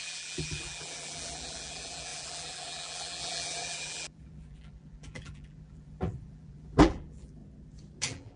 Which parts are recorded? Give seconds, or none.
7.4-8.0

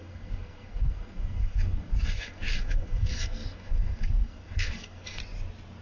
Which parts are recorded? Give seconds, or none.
5.2-5.8

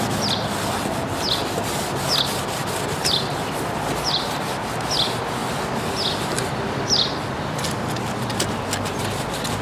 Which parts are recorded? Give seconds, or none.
0.0-9.6

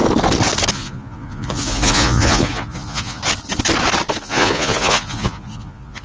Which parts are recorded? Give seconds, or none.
0.0-0.7; 3.2-4.2

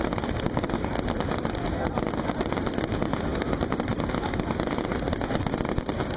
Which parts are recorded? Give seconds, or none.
0.0-6.2